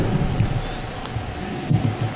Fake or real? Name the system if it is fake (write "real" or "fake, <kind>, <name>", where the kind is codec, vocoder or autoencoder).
real